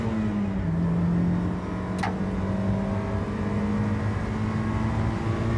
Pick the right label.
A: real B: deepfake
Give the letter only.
A